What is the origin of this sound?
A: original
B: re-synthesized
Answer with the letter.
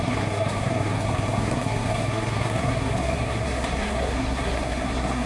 B